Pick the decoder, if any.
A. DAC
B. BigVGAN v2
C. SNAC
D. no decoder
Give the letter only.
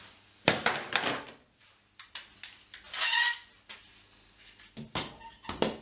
D